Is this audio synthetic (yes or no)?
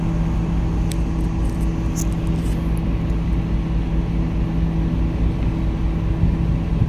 no